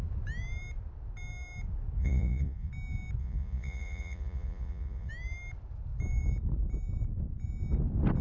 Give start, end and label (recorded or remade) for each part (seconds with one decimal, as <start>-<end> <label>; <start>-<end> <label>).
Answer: 0.0-2.0 recorded; 2.0-2.7 remade; 2.7-3.2 recorded; 3.2-5.1 remade; 5.1-8.2 recorded